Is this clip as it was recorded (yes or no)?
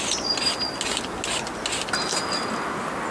yes